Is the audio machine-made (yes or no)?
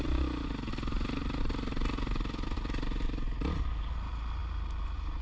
no